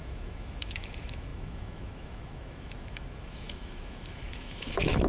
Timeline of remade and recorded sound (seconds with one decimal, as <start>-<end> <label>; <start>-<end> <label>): 0.0-5.1 remade